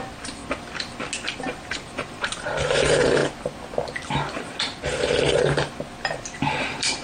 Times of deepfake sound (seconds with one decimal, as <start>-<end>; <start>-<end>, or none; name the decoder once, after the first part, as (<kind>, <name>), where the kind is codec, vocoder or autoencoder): 0.0-0.4 (vocoder, BigVGAN v2); 1.4-3.2; 6.1-7.0